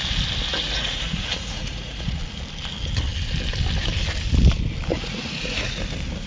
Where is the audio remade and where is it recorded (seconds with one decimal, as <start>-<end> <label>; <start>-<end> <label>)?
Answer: 0.0-0.5 recorded; 0.5-2.2 remade; 2.2-4.9 recorded; 4.9-5.8 remade; 5.8-6.3 recorded